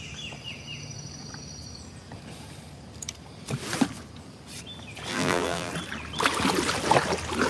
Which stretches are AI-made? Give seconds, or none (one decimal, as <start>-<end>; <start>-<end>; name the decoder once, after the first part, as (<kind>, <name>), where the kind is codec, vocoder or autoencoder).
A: 5.1-5.7 (vocoder, BigVGAN v2)

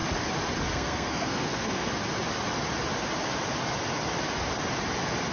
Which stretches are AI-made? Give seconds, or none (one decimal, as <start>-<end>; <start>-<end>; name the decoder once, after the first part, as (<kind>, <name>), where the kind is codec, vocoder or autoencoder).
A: 0.7-1.9 (codec, SNAC)

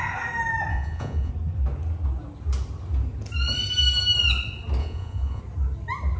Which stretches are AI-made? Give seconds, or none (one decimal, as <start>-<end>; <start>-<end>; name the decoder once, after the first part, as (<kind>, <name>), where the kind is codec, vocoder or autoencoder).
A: 0.7-1.3 (vocoder, Vocos); 4.8-5.4